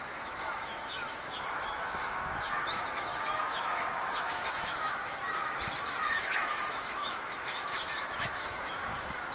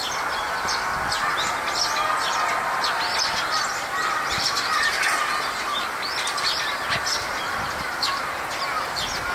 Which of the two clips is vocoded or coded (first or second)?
first